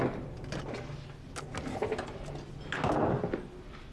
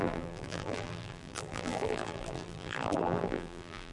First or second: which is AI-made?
second